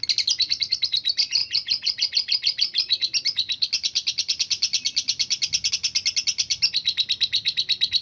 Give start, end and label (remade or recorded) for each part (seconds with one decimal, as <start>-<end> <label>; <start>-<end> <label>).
0.0-8.0 recorded